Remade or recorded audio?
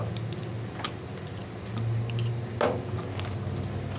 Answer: recorded